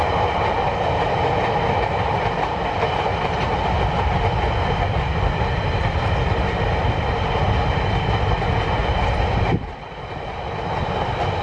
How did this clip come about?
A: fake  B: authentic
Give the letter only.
B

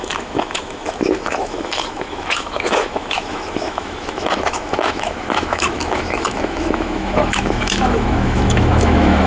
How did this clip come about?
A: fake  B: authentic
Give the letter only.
A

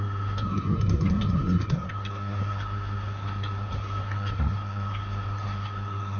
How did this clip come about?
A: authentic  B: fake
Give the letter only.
B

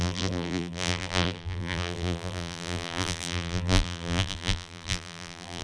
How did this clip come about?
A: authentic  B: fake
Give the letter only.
B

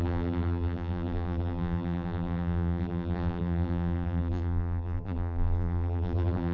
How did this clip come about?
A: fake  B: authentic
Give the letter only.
A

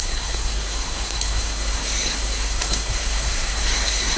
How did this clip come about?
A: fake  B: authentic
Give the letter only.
A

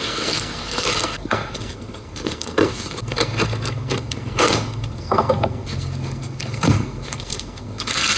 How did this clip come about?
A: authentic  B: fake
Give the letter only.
B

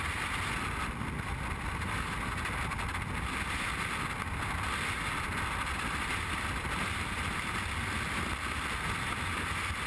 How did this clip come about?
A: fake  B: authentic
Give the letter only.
B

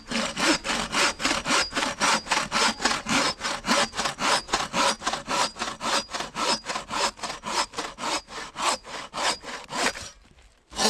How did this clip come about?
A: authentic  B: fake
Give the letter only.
A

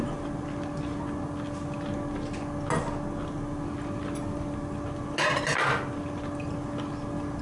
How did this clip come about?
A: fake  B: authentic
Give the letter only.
B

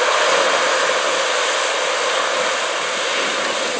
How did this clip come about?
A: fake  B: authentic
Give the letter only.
B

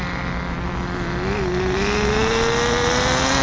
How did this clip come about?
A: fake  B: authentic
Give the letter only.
B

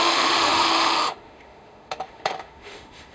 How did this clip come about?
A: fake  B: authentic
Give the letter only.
A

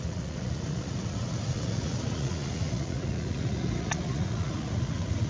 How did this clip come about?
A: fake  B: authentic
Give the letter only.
A